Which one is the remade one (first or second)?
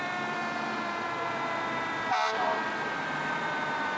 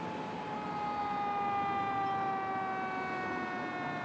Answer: first